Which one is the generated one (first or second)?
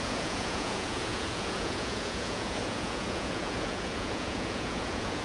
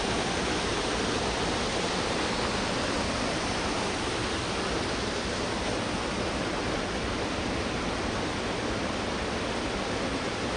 first